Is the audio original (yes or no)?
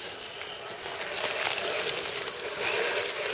yes